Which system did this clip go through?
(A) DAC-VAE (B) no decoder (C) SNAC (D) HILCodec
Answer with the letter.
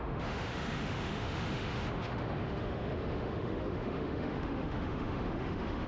A